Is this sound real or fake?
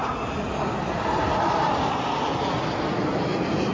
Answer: real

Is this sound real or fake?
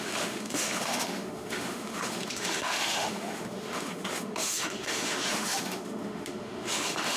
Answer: fake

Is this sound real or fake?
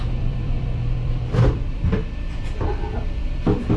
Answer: fake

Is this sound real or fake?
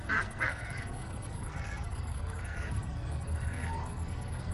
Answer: fake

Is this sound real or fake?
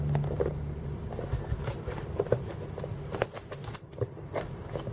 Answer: real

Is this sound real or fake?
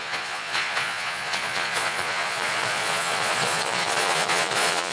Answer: fake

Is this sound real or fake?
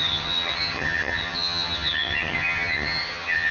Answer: fake